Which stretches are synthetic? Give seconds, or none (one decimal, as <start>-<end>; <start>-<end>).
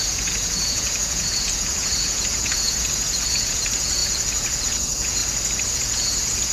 0.0-5.2; 5.7-6.5